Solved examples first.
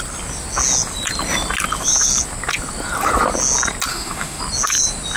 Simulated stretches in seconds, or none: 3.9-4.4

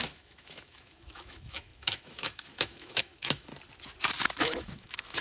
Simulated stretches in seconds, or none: 0.0-3.5; 4.4-5.2

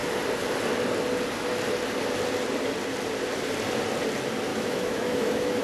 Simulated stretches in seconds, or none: 4.5-5.6

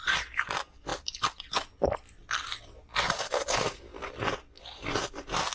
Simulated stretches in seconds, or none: none

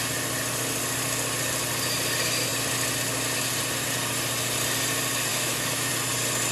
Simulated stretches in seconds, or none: 5.3-5.9

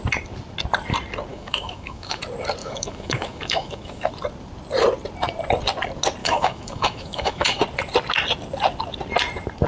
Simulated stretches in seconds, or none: 1.3-2.2; 2.6-4.1; 6.2-7.6